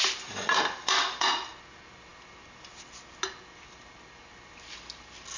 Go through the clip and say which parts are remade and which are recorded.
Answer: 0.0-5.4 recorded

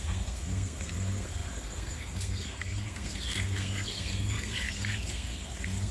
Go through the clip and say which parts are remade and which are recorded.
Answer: 0.0-5.9 remade

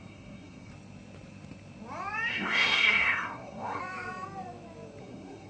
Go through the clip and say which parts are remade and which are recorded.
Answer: 0.0-0.7 remade; 0.7-2.3 recorded; 2.3-3.8 remade; 3.8-5.0 recorded; 5.0-5.5 remade

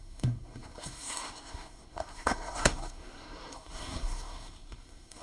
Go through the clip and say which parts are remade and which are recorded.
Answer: 0.0-5.2 remade